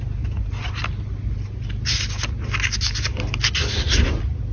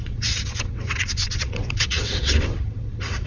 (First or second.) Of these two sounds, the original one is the first